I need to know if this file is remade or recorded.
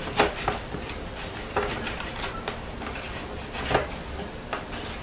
recorded